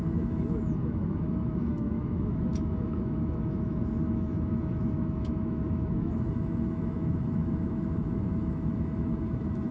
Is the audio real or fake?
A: fake